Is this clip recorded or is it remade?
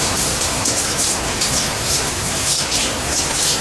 remade